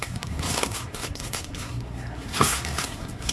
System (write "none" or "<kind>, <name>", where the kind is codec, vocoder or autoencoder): codec, SNAC